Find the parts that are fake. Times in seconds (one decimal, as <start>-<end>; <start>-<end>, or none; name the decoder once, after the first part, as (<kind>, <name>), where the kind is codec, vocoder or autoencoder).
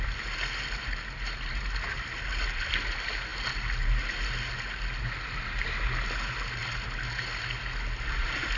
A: none